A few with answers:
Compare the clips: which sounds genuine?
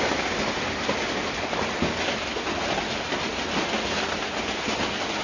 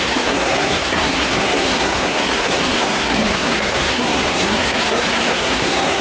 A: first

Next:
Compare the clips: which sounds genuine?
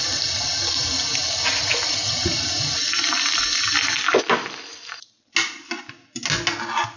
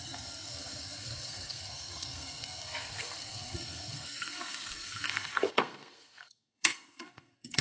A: first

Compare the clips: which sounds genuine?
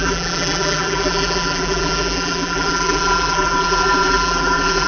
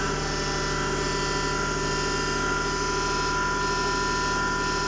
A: second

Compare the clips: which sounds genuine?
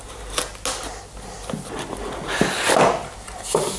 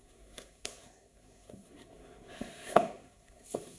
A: first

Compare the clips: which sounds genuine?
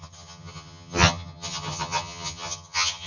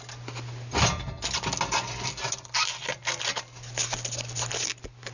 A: second